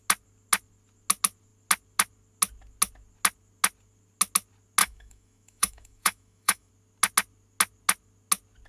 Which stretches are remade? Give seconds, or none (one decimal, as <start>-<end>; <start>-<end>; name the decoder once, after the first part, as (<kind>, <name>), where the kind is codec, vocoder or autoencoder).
4.8-6.7 (autoencoder, DAC-VAE)